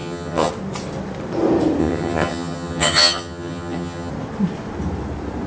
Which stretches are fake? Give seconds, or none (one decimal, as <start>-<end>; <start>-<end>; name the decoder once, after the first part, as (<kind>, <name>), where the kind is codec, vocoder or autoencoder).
0.0-0.5 (vocoder, HiFi-GAN); 1.8-4.1